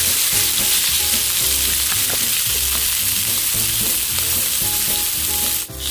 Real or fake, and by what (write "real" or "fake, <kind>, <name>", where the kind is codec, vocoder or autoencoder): real